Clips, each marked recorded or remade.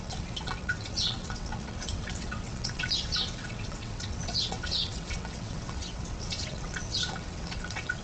remade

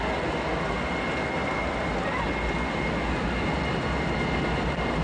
recorded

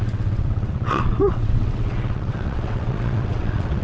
remade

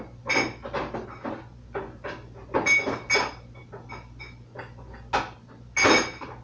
recorded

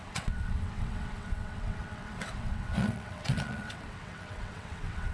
remade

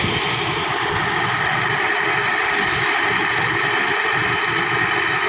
recorded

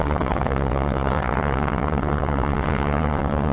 remade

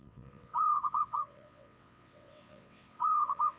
remade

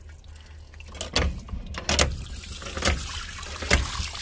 recorded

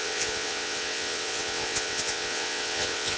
remade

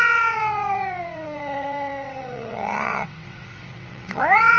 remade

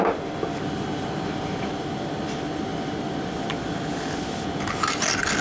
recorded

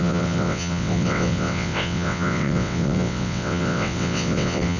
remade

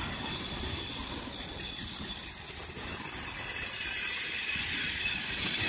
recorded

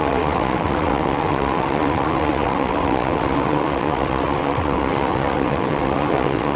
remade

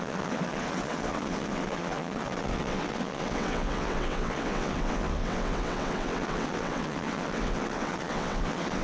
remade